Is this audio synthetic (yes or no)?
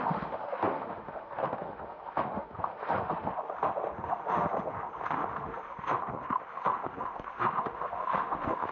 yes